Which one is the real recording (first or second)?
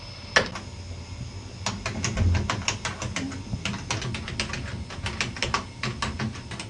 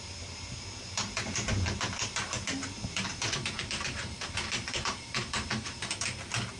first